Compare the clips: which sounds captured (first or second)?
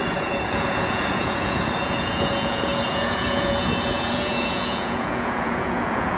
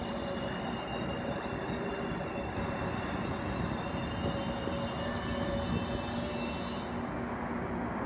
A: second